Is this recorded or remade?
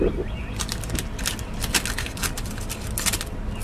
recorded